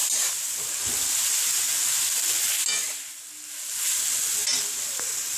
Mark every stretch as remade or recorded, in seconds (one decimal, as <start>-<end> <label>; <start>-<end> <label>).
0.0-2.6 remade; 2.6-5.4 recorded